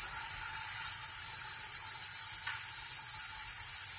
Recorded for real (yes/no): yes